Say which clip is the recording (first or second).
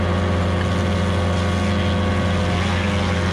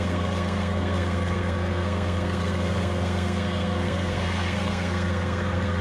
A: first